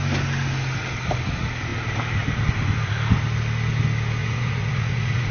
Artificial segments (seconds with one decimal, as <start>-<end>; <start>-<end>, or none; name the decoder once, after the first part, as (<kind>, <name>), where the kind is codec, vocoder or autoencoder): 4.2-5.3 (vocoder, Vocos)